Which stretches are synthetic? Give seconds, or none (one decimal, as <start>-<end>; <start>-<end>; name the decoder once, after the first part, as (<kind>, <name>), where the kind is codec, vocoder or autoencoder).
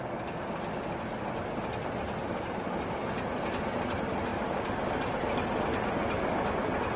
none